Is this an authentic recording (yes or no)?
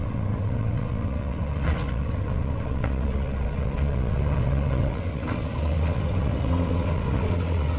no